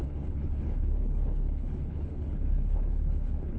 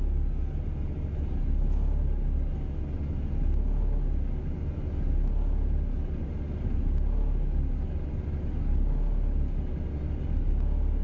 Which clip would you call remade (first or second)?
first